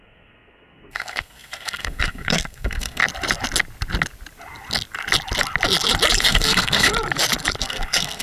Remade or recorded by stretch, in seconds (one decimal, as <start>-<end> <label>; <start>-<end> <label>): 0.0-3.0 remade; 3.0-6.2 recorded; 6.2-6.9 remade; 6.9-7.6 recorded; 7.6-8.2 remade